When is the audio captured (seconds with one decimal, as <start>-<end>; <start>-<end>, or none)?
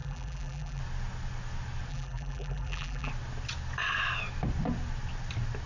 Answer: 0.8-1.9; 3.1-5.7